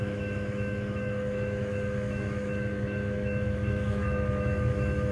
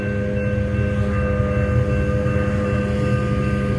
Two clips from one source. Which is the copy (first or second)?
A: first